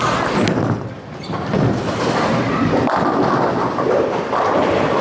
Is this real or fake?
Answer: real